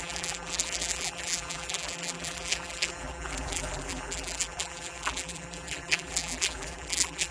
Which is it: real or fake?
fake